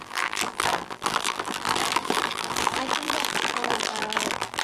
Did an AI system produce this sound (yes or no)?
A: yes